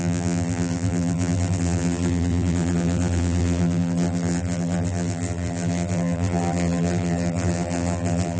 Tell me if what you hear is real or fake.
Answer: fake